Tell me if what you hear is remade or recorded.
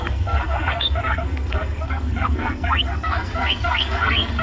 remade